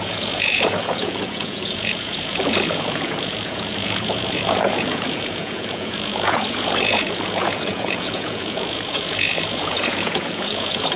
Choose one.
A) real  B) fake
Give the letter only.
B